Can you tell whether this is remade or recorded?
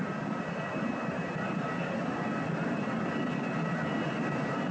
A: recorded